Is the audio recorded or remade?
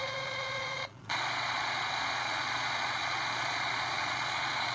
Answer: remade